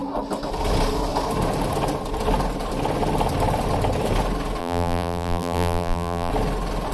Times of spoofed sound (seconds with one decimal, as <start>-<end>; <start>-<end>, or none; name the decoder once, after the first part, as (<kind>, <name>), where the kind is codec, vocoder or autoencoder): 4.6-6.3 (vocoder, BigVGAN v2)